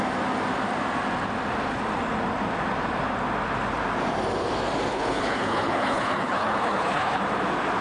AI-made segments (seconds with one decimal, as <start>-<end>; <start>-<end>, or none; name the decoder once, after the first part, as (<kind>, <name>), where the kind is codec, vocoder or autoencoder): 4.9-7.2 (codec, HILCodec)